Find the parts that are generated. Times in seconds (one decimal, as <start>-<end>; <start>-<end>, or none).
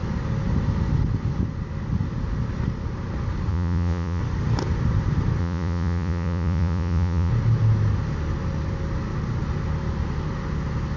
3.5-4.2; 5.4-7.3